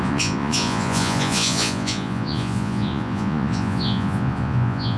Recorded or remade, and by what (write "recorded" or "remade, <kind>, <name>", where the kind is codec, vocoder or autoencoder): remade, vocoder, Vocos